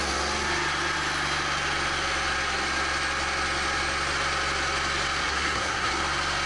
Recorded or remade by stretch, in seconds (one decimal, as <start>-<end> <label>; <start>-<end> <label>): 0.0-5.2 recorded; 5.2-5.9 remade; 5.9-6.5 recorded

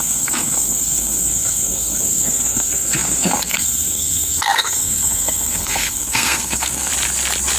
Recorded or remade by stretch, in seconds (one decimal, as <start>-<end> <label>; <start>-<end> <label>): 0.0-6.9 remade; 6.9-7.6 recorded

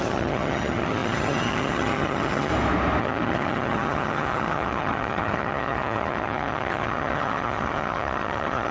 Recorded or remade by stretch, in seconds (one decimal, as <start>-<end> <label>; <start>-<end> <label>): 0.0-2.5 remade; 2.5-3.0 recorded; 3.0-8.7 remade

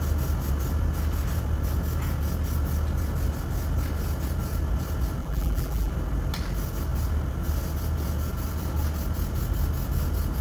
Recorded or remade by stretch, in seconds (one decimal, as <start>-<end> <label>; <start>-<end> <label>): 0.0-5.2 recorded; 5.2-5.9 remade; 5.9-10.4 recorded

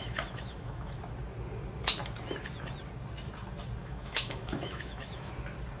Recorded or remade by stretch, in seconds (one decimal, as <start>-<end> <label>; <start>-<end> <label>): 0.0-1.0 remade; 1.0-3.8 recorded; 3.8-5.3 remade; 5.3-5.8 recorded

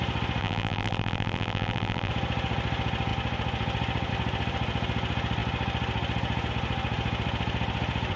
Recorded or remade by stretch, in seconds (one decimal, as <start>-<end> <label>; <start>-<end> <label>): 0.0-0.4 recorded; 0.4-2.1 remade; 2.1-8.2 recorded

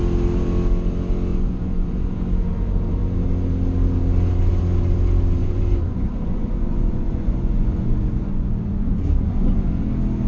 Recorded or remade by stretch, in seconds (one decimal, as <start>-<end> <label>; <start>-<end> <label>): 0.0-1.3 recorded; 1.3-2.2 remade; 2.2-5.4 recorded; 5.4-9.9 remade; 9.9-10.3 recorded

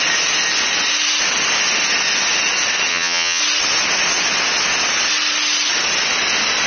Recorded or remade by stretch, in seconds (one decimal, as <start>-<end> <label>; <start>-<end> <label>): 0.0-2.9 recorded; 2.9-3.4 remade; 3.4-6.7 recorded